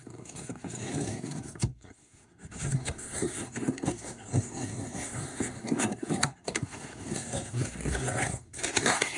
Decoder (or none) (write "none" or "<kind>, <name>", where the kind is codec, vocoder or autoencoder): codec, SNAC